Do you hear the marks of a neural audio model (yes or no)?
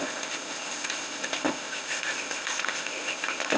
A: yes